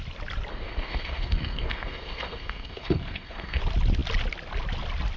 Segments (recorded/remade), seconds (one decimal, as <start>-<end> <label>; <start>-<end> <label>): 0.0-0.5 recorded; 0.5-3.6 remade; 3.6-5.2 recorded